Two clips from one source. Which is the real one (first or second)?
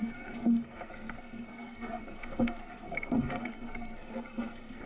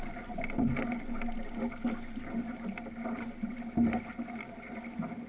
second